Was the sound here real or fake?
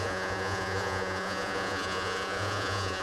fake